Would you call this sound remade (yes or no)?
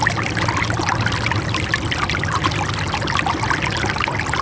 no